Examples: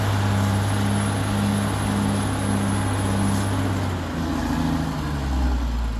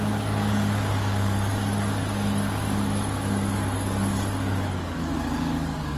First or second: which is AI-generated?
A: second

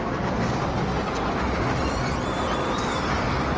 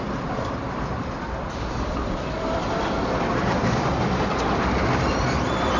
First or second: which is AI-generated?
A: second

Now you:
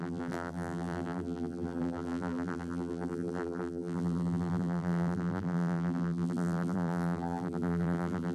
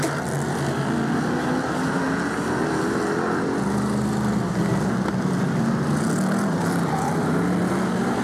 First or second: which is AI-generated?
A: first